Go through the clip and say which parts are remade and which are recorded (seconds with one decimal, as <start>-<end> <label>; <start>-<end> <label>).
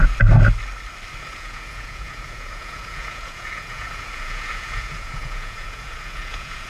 0.0-1.2 recorded; 1.2-6.7 remade